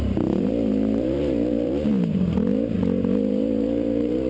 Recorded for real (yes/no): no